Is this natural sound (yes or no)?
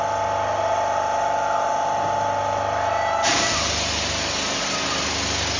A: yes